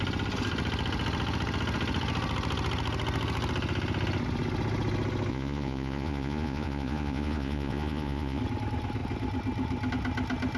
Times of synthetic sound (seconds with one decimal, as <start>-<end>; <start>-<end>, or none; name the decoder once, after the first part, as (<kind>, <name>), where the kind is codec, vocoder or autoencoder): 5.3-8.4 (vocoder, Vocos)